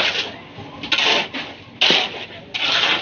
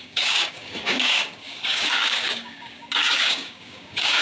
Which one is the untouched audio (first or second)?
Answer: first